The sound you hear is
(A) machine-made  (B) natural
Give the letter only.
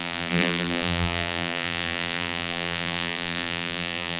A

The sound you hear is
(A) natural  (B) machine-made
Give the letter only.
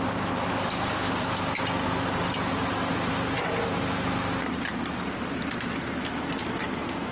A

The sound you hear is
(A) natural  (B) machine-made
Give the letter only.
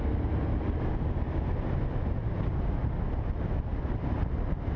A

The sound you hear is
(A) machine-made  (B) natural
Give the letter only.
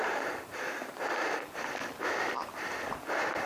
A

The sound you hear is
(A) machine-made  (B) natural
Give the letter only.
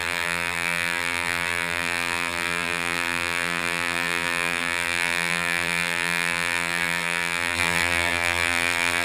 A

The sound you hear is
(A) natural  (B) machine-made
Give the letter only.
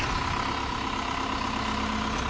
A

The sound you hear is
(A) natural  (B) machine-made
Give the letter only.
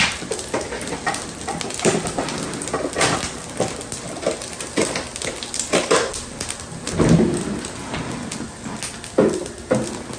A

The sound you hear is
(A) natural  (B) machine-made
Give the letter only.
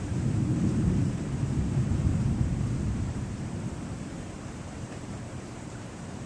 B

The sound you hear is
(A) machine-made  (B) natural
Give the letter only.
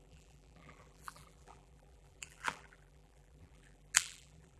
A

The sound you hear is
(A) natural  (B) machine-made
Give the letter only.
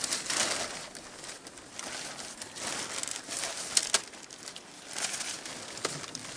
A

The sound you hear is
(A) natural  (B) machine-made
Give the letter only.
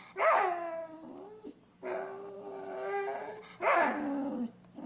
A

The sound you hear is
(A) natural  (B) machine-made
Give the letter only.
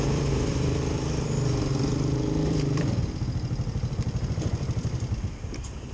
B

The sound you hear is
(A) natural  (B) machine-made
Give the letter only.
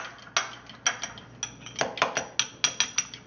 A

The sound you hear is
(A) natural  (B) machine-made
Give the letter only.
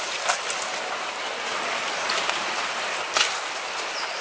A